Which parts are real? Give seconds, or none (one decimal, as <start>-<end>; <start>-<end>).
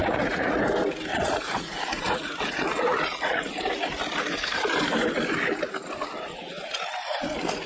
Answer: 0.6-1.1; 3.6-7.7